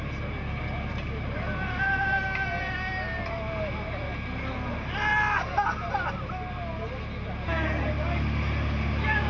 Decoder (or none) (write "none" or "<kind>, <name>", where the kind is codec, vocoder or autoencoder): none